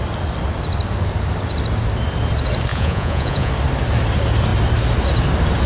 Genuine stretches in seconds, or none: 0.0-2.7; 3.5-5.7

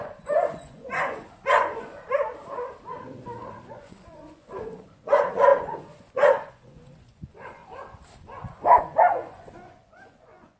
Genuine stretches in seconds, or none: 2.0-3.7; 7.6-8.8

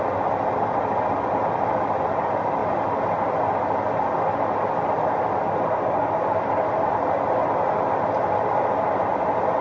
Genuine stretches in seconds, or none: 0.0-9.6

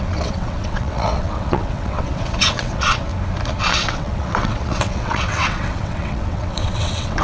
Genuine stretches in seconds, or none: 3.1-3.6

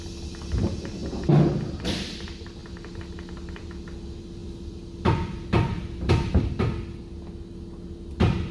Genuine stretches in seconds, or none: 0.0-4.4; 6.1-8.5

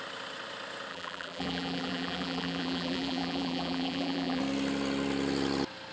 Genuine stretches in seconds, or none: 0.0-0.9; 4.4-5.9

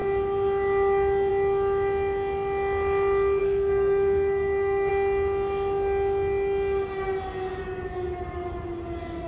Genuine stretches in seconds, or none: 0.0-3.4; 4.9-9.3